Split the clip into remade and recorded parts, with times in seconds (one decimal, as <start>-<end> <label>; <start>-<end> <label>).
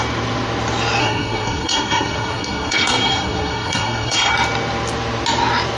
0.0-1.0 recorded; 1.0-4.3 remade; 4.3-5.8 recorded